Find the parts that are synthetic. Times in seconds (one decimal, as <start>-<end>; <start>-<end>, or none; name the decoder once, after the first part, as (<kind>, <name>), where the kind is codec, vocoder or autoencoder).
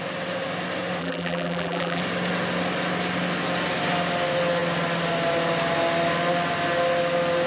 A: 1.0-2.0 (vocoder, BigVGAN v2)